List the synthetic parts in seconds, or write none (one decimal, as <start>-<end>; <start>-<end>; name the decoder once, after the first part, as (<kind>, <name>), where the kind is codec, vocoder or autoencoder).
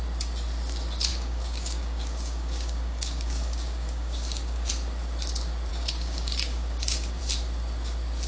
1.1-4.7 (codec, DAC); 5.7-7.2